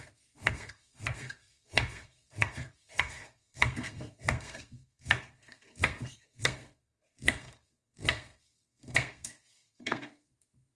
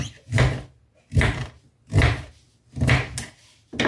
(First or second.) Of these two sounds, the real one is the second